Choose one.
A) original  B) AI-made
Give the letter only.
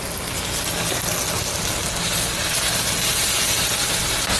A